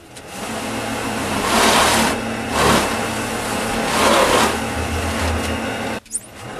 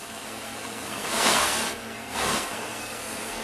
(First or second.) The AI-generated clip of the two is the second